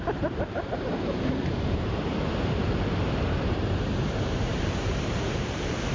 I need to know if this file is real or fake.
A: fake